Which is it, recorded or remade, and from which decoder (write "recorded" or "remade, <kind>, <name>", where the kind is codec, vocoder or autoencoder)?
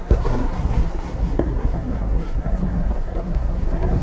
remade, codec, SNAC